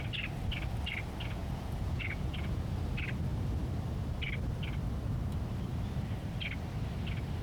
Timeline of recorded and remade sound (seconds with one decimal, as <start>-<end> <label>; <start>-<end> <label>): 0.0-1.4 recorded; 1.4-2.7 remade; 2.7-7.4 recorded